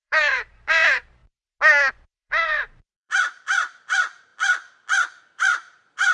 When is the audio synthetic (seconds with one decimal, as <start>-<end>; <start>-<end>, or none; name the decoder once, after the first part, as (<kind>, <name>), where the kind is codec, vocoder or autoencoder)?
0.0-1.2 (vocoder, BigVGAN v2); 1.9-4.3; 5.3-6.1